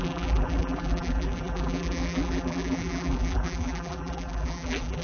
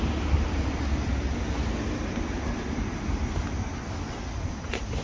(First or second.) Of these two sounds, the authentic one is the second